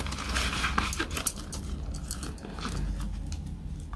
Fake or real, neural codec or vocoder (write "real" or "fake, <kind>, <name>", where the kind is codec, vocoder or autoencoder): real